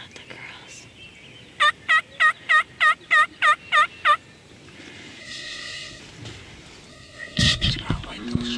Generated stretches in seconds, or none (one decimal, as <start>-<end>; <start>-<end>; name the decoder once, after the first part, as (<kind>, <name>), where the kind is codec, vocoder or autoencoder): 5.2-6.0 (codec, SNAC); 6.9-7.7